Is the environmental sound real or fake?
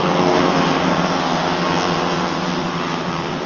real